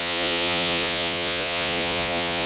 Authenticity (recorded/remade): remade